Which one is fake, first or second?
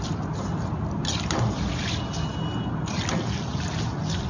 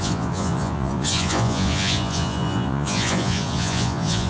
second